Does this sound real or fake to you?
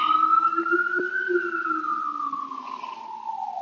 real